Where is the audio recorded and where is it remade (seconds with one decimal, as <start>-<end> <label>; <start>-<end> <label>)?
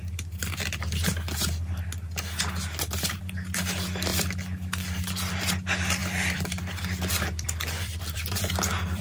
0.0-6.0 recorded; 6.0-9.0 remade